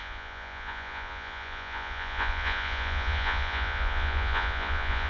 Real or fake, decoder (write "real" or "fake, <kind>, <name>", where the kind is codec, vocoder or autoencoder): fake, vocoder, Vocos